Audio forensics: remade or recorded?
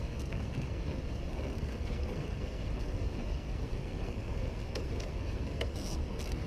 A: remade